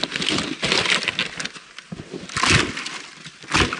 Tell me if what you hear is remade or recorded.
recorded